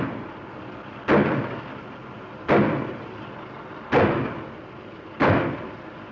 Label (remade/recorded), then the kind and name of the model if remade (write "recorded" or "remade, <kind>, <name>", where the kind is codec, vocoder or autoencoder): recorded